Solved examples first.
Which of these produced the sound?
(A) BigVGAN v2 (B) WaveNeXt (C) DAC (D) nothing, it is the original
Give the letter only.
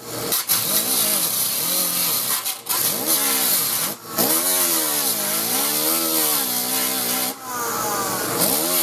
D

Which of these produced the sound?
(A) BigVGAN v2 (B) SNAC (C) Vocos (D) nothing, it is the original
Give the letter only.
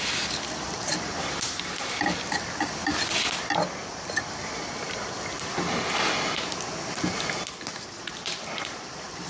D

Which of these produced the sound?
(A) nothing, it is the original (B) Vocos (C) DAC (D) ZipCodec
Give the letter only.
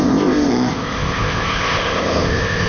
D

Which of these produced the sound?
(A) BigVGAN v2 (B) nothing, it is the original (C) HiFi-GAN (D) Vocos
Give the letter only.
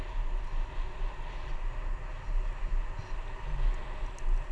B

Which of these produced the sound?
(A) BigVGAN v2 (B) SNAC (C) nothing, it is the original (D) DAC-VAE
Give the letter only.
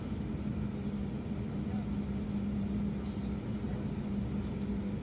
C